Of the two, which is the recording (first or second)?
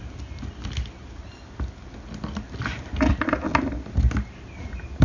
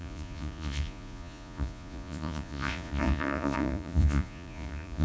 first